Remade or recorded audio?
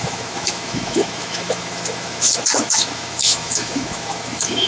remade